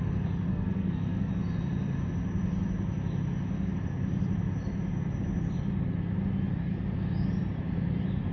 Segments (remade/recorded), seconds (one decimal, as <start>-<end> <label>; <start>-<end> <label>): 0.0-0.5 recorded; 0.5-1.3 remade; 1.3-8.3 recorded